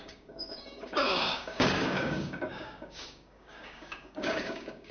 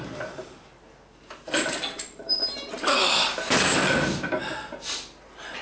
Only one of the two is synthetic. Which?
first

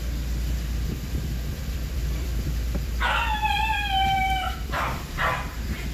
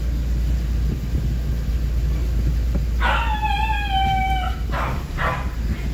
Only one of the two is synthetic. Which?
first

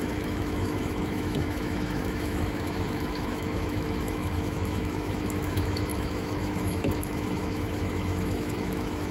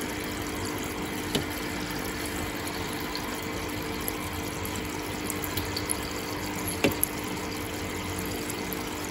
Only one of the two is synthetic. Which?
first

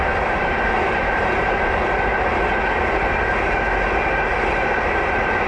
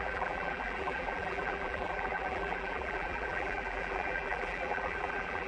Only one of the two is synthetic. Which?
second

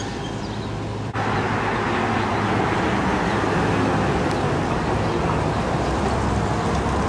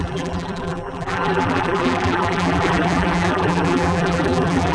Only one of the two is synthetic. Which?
second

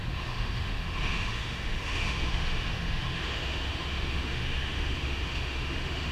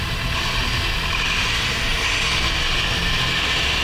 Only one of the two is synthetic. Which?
first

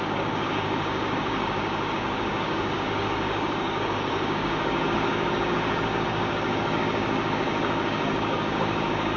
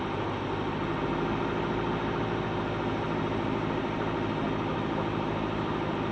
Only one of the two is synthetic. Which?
first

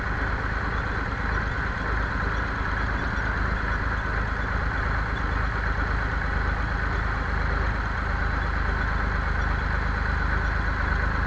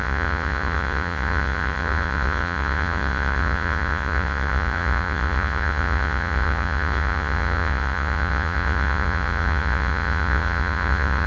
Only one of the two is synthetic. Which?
second